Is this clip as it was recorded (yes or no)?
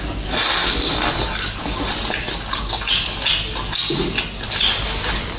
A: yes